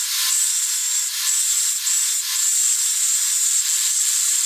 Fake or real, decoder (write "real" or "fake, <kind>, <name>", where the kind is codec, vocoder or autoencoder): real